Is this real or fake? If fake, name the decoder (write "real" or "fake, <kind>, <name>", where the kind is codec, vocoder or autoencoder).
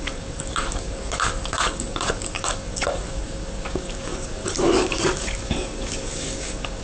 fake, codec, DAC